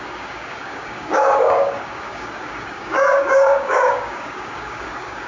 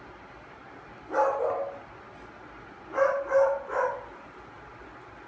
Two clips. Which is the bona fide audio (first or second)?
second